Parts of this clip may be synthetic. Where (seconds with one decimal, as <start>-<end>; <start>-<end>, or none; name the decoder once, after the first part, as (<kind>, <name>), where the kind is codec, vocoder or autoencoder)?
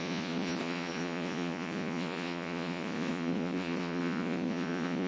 0.0-5.1 (vocoder, Vocos)